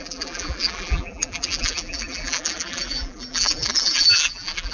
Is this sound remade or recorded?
remade